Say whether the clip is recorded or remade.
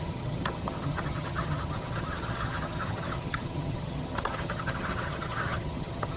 remade